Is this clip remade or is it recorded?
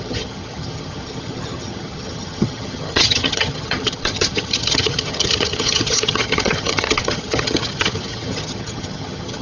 remade